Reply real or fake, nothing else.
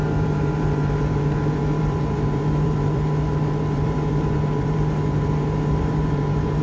fake